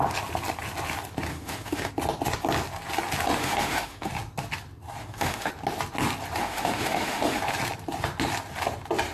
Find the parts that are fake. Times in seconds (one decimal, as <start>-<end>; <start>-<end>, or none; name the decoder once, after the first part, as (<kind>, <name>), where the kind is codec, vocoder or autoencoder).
1.3-1.9 (autoencoder, DAC-VAE); 3.4-4.1; 5.0-5.5; 6.4-7.4